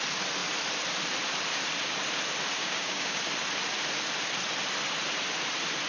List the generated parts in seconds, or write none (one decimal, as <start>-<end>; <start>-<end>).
2.6-3.2